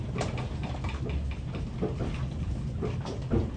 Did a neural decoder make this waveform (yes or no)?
no